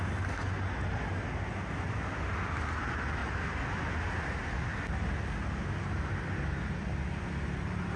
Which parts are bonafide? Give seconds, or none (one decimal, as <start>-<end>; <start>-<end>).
0.0-8.0